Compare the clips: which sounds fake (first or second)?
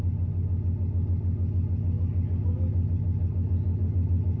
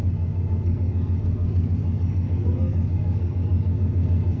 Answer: second